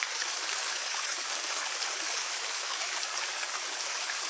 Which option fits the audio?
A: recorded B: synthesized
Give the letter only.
B